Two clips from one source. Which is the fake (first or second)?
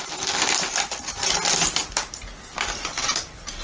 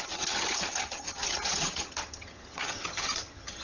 second